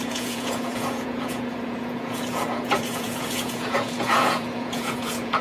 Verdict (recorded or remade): remade